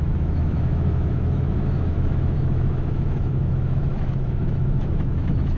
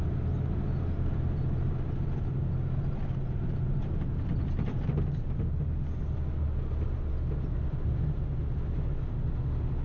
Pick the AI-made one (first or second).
first